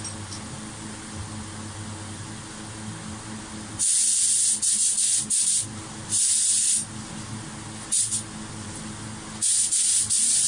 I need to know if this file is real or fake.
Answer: real